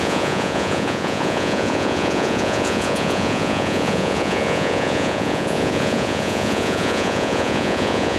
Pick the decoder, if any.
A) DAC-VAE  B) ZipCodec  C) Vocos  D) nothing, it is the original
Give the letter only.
C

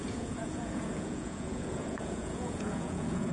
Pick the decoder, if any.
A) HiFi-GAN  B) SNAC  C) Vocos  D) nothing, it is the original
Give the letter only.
C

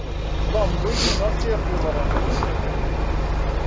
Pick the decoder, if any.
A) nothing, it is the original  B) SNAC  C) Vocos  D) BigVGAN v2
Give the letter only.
A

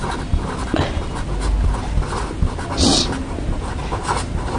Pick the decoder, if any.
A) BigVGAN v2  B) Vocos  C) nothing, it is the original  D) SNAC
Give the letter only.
C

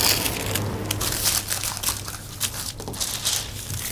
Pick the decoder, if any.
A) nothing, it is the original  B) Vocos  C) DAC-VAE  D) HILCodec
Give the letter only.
A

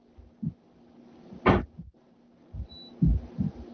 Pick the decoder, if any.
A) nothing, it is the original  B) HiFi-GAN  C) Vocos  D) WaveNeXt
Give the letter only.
A